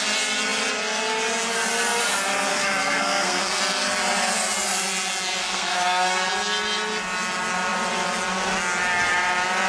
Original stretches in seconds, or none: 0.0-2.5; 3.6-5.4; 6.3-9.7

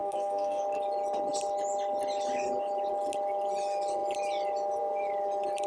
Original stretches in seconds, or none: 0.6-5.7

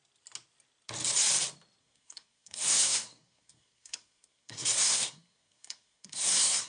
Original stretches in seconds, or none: 0.0-1.8

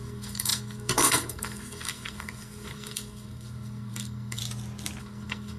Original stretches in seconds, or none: 4.4-5.0

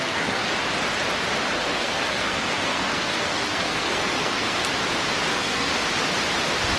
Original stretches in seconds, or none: 0.4-1.6; 4.6-5.2; 5.7-6.8